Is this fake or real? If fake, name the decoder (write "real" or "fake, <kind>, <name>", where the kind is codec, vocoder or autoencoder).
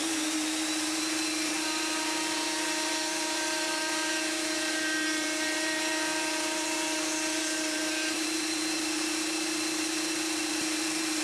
fake, vocoder, BigVGAN v2